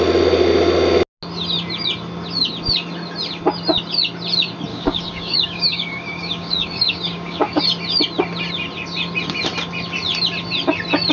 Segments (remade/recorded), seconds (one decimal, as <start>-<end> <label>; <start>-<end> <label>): 0.0-4.7 recorded; 4.7-7.6 remade; 7.6-11.1 recorded